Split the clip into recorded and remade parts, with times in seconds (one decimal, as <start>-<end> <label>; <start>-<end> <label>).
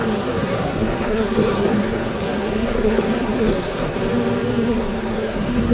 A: 0.0-4.0 remade; 4.0-4.7 recorded; 4.7-5.7 remade